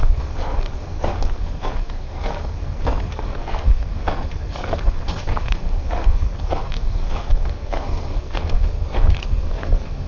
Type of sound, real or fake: fake